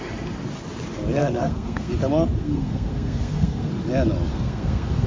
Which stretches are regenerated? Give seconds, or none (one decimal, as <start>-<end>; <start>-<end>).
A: 1.2-1.9; 2.4-3.7; 4.3-5.1